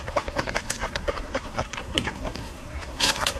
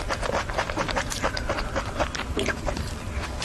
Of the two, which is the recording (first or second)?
second